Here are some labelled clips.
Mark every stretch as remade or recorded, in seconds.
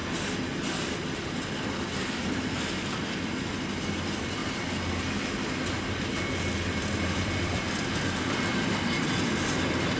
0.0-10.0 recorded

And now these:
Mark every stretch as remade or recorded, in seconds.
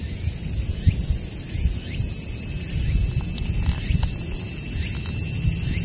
0.0-5.8 recorded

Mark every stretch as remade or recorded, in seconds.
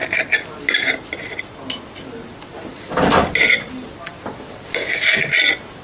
0.0-4.1 recorded; 4.1-5.3 remade; 5.3-5.8 recorded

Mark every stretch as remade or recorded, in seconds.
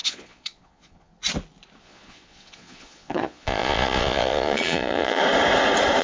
0.0-1.1 remade; 1.1-1.8 recorded; 1.8-5.2 remade; 5.2-6.0 recorded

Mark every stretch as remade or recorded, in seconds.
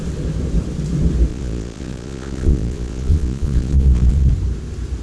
0.0-1.3 recorded; 1.3-4.3 remade; 4.3-5.0 recorded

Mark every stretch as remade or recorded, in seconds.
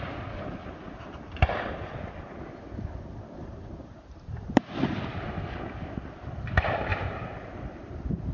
0.0-3.4 recorded; 3.4-5.0 remade; 5.0-6.9 recorded; 6.9-7.6 remade; 7.6-8.3 recorded